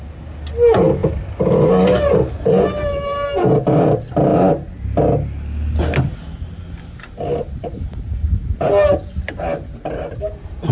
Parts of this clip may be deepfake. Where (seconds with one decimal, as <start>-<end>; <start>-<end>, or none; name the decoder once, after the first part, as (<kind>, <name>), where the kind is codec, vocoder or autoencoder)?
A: none